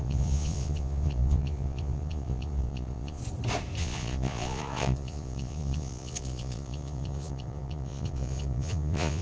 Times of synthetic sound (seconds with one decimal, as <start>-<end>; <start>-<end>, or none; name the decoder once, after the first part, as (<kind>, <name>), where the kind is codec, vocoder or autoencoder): 0.0-3.2 (vocoder, Vocos); 3.8-9.2